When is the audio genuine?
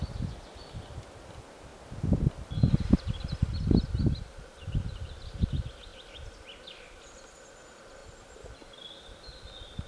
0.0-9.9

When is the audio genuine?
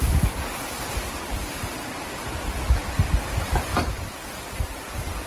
none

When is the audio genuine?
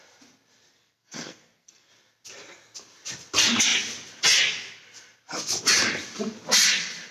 0.0-0.7; 1.9-7.1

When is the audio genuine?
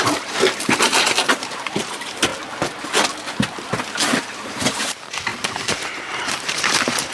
2.3-4.2; 5.3-5.9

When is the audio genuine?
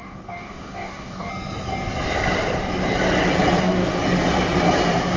1.3-3.6; 4.0-5.2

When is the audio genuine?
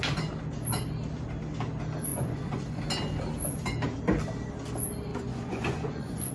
0.0-2.1; 2.8-5.1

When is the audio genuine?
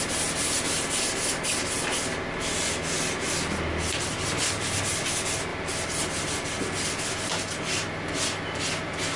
0.0-5.5; 6.6-9.2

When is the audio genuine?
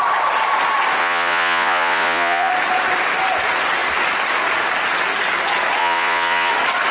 0.0-1.0; 2.5-5.8; 6.5-6.9